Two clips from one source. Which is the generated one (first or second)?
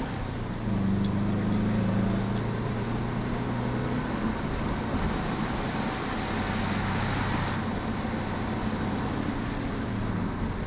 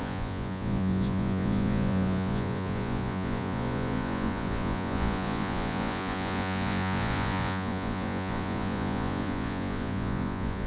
second